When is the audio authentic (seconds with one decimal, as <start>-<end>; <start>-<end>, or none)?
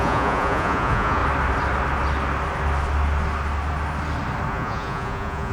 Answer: 1.2-4.5